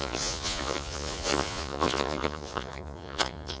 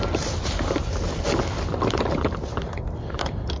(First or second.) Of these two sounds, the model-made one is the first